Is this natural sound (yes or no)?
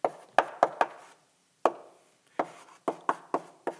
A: yes